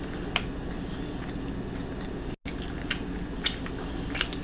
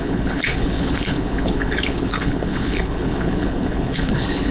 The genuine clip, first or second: first